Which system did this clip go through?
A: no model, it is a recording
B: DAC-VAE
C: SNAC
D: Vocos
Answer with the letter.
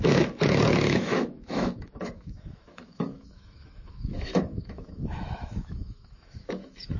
B